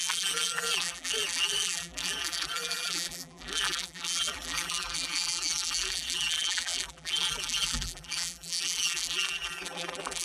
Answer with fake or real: fake